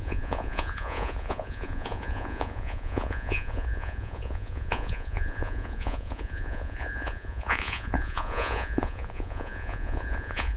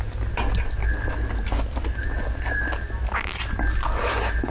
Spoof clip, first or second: first